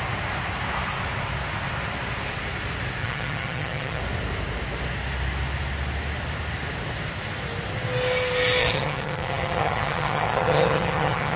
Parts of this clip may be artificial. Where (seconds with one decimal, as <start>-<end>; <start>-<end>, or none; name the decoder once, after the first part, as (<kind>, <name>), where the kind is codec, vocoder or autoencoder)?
3.0-4.0 (vocoder, HiFi-GAN); 8.6-11.4